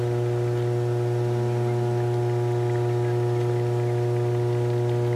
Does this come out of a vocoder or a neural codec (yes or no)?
no